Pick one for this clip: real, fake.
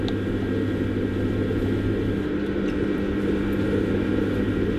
real